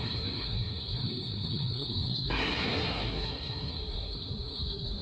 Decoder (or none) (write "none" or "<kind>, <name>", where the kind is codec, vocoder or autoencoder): codec, SNAC